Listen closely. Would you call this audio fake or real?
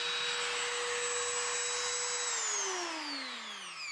real